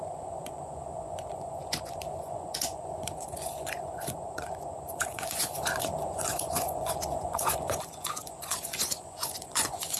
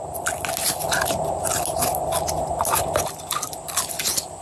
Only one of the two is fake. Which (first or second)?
first